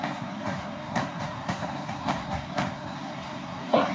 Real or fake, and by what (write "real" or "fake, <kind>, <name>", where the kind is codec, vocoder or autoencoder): fake, codec, SNAC